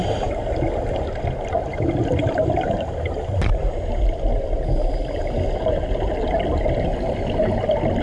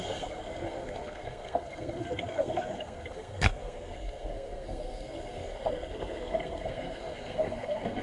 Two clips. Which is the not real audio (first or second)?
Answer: second